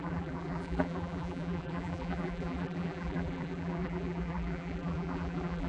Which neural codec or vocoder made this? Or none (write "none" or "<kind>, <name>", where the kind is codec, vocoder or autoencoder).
vocoder, BigVGAN v2